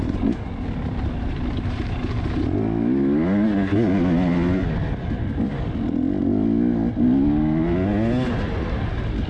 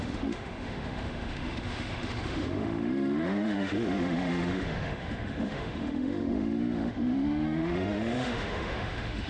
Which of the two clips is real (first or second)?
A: first